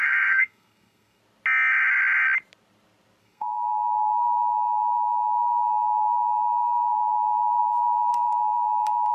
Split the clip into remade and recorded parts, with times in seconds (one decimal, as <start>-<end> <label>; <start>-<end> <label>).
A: 0.0-1.2 remade; 1.2-3.2 recorded; 3.2-9.1 remade